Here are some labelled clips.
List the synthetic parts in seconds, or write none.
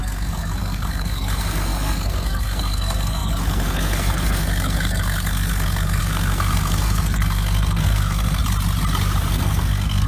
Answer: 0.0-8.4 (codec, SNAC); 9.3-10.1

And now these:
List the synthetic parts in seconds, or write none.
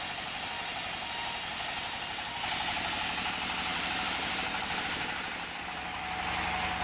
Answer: 3.7-4.8 (vocoder, BigVGAN v2)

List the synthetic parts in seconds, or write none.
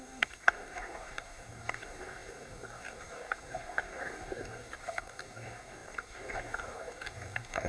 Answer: 0.0-7.7 (codec, DAC)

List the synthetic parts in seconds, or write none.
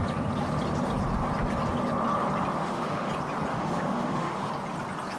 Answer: 2.6-3.1 (autoencoder, DAC-VAE); 3.5-4.5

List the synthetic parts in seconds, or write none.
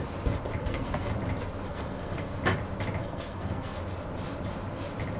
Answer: 0.6-1.1 (codec, SNAC); 1.7-2.4; 3.0-3.8